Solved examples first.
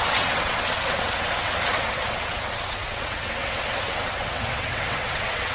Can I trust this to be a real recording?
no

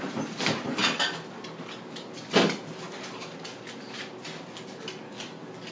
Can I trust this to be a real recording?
yes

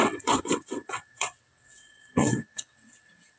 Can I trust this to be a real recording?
no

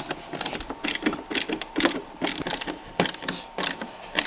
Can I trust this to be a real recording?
yes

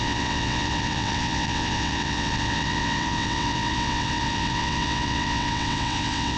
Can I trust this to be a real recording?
no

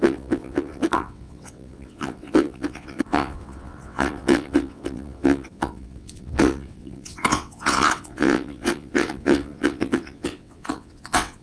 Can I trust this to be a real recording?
no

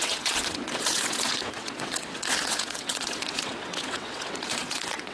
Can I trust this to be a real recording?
no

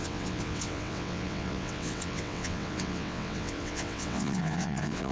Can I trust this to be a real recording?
no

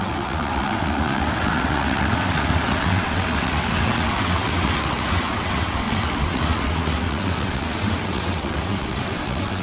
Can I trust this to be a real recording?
no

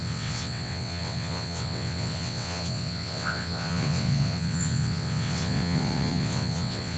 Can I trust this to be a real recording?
no